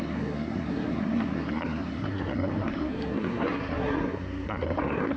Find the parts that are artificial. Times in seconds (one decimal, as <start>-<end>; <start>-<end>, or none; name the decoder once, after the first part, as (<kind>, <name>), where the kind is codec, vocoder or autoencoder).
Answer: 0.0-5.2 (codec, SNAC)